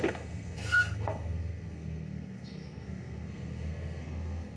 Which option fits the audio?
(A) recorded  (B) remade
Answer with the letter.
B